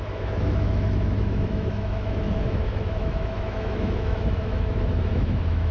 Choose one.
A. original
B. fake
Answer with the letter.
B